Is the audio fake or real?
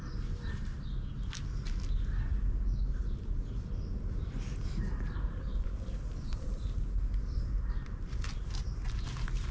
real